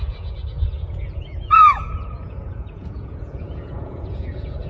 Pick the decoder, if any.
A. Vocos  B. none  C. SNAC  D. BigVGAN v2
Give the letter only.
A